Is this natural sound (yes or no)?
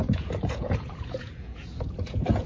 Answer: no